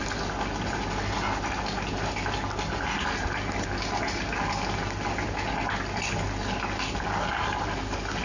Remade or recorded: recorded